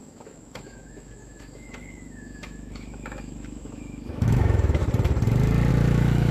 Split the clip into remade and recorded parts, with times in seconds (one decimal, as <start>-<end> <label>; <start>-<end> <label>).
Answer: 0.0-4.8 remade; 4.8-5.7 recorded; 5.7-6.3 remade